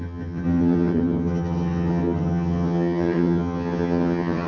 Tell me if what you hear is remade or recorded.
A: remade